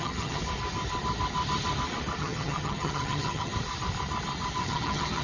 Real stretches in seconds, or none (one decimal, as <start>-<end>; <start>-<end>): 0.4-2.2; 3.5-4.6